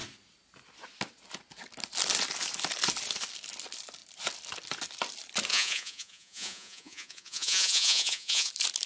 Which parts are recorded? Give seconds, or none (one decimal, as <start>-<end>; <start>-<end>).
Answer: 0.0-5.5; 8.5-8.9